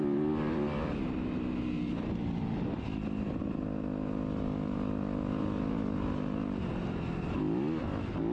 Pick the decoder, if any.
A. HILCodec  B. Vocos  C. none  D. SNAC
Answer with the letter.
C